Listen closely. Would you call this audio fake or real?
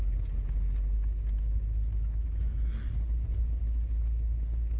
real